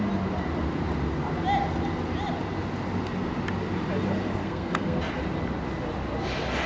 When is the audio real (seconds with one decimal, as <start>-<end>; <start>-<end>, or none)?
0.0-4.4; 5.0-6.7